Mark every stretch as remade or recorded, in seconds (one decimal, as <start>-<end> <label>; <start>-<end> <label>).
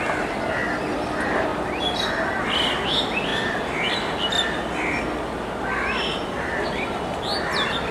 0.0-7.9 recorded